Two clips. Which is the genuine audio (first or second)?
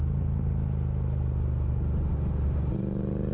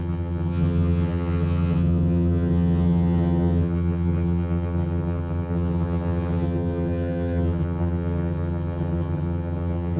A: first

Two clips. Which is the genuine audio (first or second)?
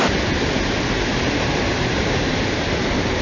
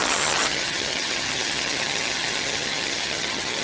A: first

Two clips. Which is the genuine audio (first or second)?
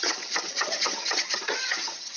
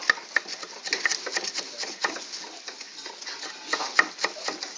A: second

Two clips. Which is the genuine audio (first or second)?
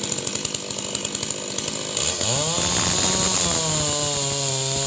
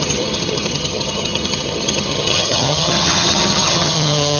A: first